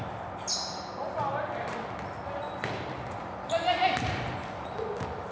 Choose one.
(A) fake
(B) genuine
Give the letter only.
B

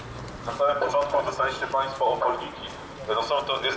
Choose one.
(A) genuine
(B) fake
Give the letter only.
A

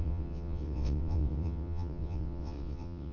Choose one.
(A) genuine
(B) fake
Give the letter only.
B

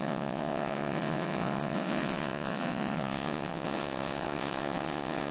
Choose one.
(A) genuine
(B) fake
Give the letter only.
B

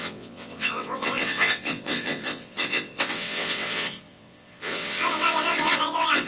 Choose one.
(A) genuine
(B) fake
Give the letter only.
B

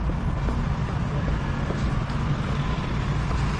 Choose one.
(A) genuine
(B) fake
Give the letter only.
A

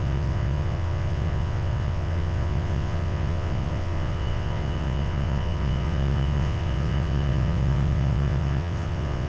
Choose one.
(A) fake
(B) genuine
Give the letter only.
A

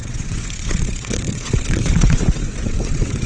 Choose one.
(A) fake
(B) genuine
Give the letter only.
A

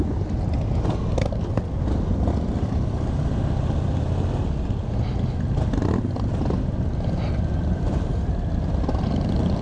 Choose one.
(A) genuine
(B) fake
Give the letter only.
A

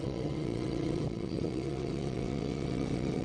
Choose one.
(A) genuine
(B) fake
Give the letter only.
B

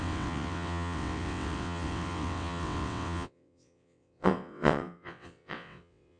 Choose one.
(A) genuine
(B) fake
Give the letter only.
B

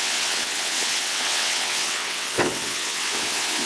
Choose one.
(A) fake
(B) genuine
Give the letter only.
A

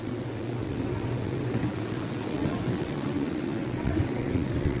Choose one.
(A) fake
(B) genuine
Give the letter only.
A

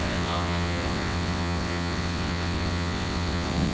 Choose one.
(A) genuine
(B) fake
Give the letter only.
B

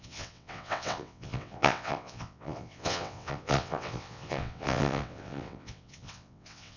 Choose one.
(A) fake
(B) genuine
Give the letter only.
A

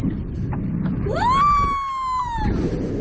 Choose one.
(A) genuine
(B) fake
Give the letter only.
A